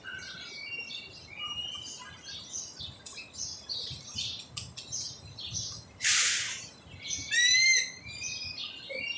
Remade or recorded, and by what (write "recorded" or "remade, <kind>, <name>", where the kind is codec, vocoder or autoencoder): recorded